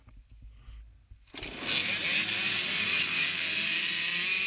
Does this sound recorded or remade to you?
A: recorded